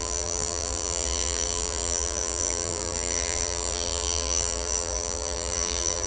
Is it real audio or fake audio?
fake